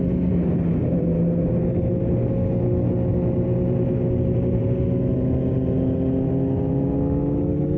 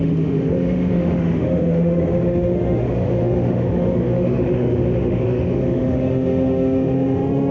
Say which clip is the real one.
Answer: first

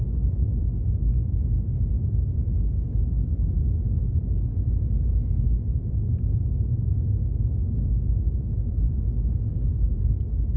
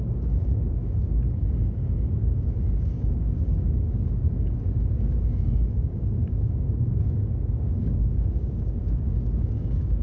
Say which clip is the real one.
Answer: first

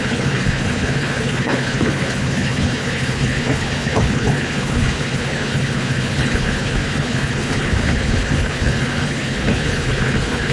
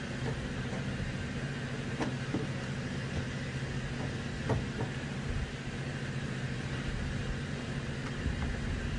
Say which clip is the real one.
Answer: second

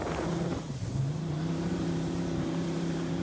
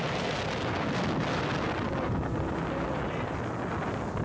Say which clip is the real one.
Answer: second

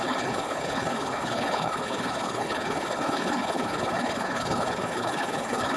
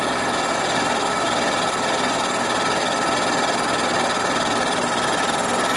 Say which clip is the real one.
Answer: second